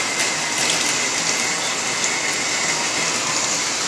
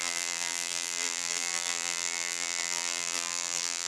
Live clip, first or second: first